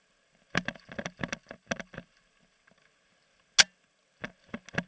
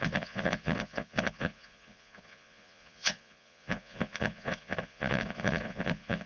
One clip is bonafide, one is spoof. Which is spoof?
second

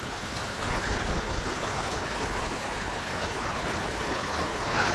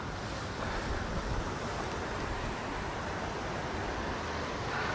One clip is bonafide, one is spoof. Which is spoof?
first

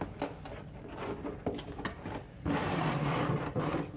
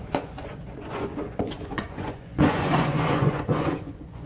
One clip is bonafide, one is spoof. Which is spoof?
second